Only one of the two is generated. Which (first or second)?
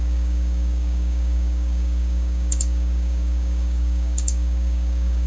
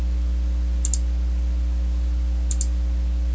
first